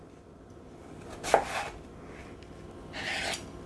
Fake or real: real